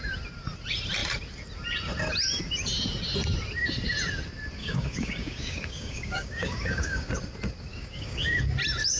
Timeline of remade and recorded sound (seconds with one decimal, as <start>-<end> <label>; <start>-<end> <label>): 0.0-4.6 recorded; 4.6-7.1 remade; 7.1-7.7 recorded; 7.7-8.4 remade; 8.4-9.0 recorded